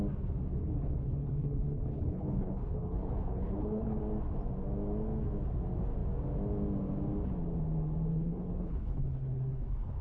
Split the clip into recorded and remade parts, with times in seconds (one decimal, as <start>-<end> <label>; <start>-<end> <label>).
0.0-0.6 recorded; 0.6-4.0 remade; 4.0-8.1 recorded; 8.1-10.0 remade